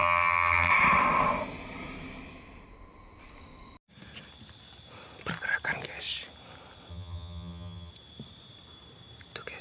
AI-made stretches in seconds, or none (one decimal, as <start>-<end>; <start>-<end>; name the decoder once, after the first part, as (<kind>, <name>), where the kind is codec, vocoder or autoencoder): 0.0-0.7 (vocoder, HiFi-GAN); 6.9-7.9